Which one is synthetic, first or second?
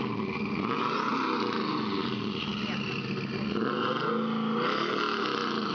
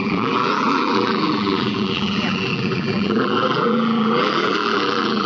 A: second